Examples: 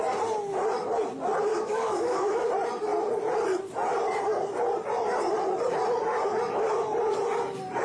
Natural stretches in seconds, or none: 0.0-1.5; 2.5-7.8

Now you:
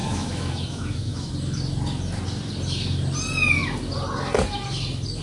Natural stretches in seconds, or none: 1.3-5.2

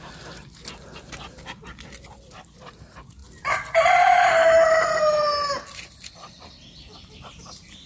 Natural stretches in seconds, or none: 0.0-7.9

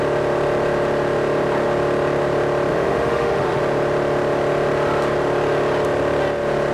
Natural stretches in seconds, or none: 0.0-2.7; 3.6-6.7

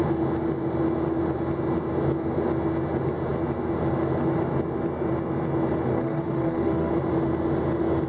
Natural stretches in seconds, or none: 0.0-5.9; 6.9-8.1

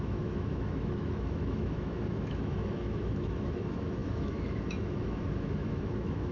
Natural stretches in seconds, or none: none

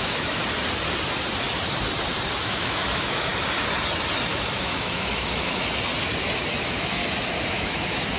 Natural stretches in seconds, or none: 0.4-2.4; 3.3-4.3; 5.6-6.6; 7.0-7.5

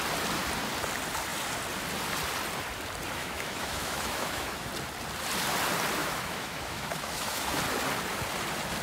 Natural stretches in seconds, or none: 0.0-3.2; 4.7-6.0; 7.6-8.8